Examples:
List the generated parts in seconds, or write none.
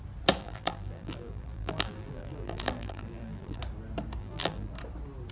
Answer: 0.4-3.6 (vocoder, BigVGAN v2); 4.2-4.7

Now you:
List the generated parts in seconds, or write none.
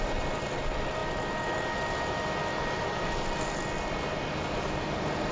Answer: none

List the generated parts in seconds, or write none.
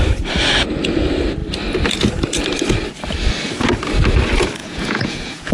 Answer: 4.6-5.5 (vocoder, Vocos)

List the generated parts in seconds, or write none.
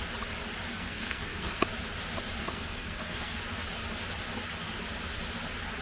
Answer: 0.7-1.6 (codec, SNAC); 2.4-3.4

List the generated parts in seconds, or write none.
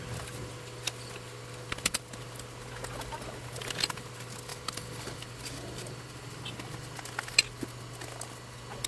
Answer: 4.5-5.2 (vocoder, BigVGAN v2)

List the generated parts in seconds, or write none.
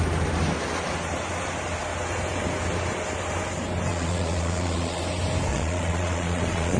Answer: 3.9-5.0 (vocoder, Vocos); 5.5-6.8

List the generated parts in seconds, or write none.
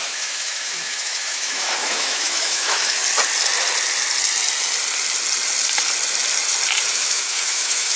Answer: 0.0-3.0 (autoencoder, DAC-VAE); 6.9-8.0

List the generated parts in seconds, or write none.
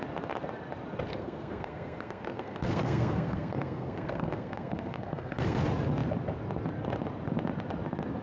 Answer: 1.1-5.6 (codec, SNAC)